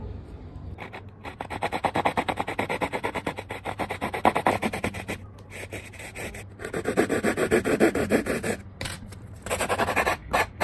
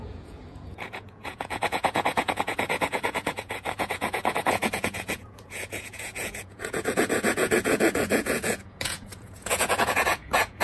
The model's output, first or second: second